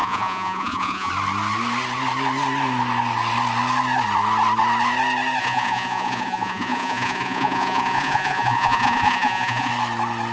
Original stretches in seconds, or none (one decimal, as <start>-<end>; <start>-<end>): 1.1-5.4; 9.7-10.3